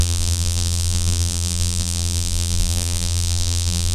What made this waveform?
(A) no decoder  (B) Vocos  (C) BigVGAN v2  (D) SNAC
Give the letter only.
C